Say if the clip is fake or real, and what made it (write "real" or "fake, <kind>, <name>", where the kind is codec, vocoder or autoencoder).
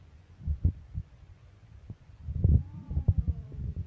fake, vocoder, Vocos